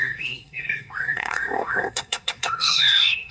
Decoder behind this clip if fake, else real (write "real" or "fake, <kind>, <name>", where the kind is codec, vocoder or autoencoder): fake, codec, SNAC